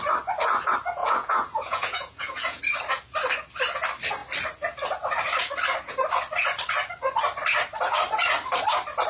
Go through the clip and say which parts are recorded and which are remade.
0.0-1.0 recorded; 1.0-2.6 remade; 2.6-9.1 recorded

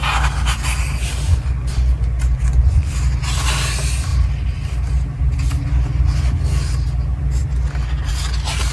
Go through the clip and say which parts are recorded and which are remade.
0.0-1.3 recorded; 1.3-2.9 remade; 2.9-8.7 recorded

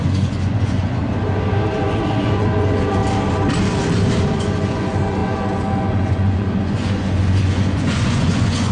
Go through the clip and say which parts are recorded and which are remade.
0.0-1.0 remade; 1.0-1.8 recorded; 1.8-3.0 remade; 3.0-4.4 recorded; 4.4-8.7 remade

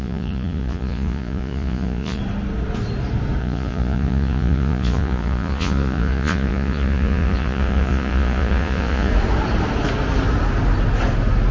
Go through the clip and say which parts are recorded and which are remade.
0.0-2.2 remade; 2.2-3.4 recorded; 3.4-9.1 remade; 9.1-11.5 recorded